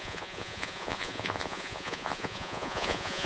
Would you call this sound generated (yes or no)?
yes